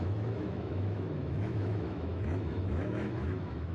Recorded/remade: remade